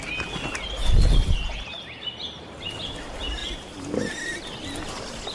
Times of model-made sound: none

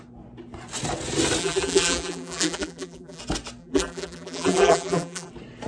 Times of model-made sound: 1.4-3.2 (vocoder, BigVGAN v2); 3.6-5.3

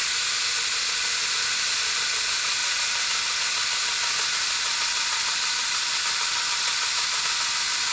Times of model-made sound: none